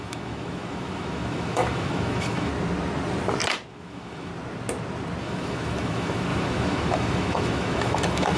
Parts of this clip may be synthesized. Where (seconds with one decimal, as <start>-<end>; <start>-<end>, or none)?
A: 0.0-2.5; 3.7-4.3; 5.2-8.4